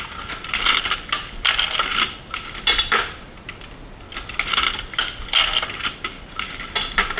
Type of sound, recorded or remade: recorded